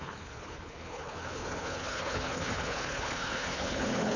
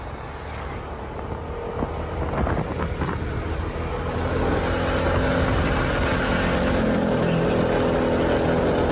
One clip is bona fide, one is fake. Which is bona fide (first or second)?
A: second